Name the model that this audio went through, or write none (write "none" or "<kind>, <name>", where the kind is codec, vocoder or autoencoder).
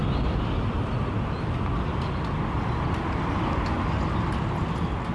none